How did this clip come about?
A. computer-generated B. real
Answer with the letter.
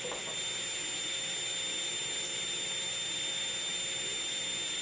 B